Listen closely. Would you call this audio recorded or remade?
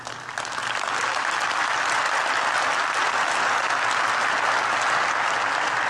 recorded